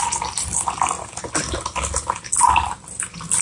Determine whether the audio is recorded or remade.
recorded